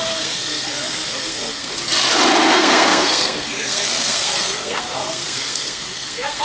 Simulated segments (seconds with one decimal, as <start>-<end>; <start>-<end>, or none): 0.0-1.7; 2.5-6.4